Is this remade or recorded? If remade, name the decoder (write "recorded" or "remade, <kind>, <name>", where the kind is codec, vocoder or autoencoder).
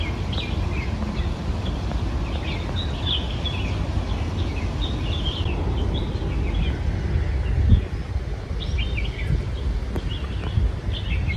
recorded